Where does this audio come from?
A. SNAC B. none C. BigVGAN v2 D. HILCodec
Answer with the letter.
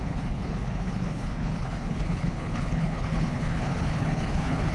D